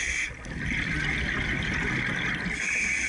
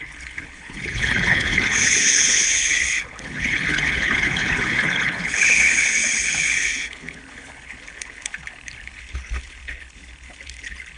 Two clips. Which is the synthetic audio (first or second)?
second